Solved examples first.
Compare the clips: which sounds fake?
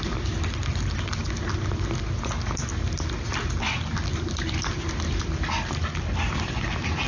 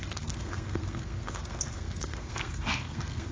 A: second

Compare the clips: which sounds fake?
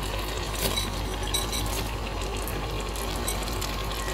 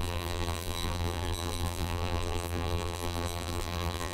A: second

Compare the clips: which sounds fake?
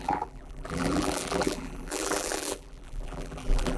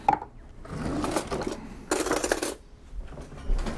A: first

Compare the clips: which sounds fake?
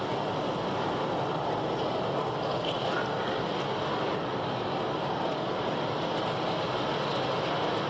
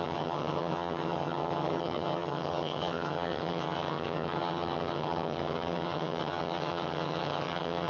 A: second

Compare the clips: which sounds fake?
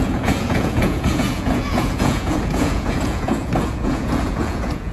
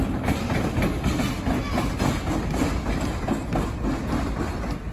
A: first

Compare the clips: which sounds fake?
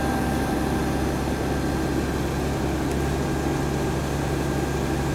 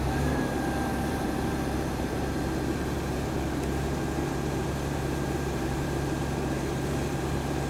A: second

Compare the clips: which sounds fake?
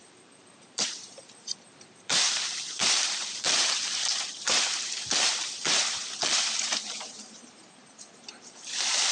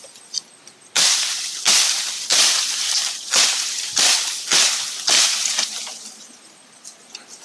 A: first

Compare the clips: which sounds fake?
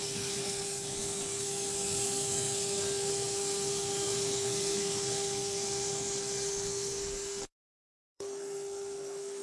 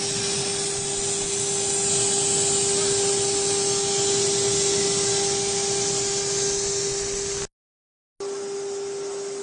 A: first